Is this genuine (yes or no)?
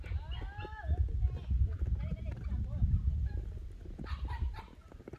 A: yes